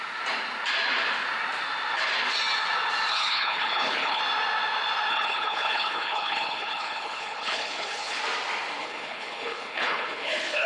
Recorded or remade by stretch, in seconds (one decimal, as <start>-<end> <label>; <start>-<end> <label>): 0.0-3.1 recorded; 3.1-4.2 remade; 4.2-5.1 recorded; 5.1-8.2 remade; 8.2-8.8 recorded; 8.8-10.7 remade